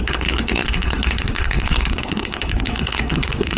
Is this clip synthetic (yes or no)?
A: yes